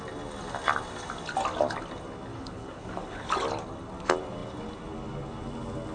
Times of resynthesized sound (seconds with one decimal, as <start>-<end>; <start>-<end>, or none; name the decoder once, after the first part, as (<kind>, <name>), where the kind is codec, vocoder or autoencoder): 2.3-3.3 (codec, HILCodec)